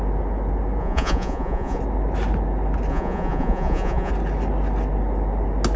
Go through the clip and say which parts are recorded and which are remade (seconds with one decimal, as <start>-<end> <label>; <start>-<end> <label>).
0.0-0.8 recorded; 0.8-1.8 remade; 1.8-2.9 recorded; 2.9-4.1 remade; 4.1-5.8 recorded